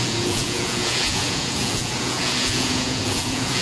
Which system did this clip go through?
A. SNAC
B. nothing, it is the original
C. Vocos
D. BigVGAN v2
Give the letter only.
C